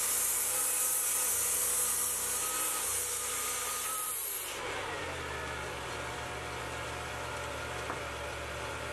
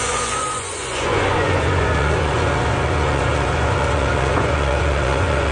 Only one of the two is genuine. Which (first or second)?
first